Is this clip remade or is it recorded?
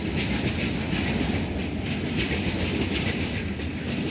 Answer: recorded